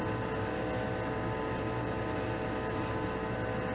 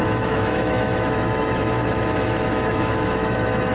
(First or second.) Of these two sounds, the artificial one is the second